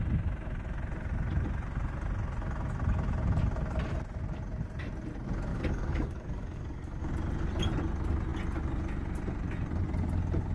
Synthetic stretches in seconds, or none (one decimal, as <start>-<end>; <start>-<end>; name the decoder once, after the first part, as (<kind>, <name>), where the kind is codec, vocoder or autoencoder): 5.5-7.1 (codec, DAC)